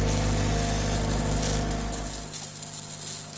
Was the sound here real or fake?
real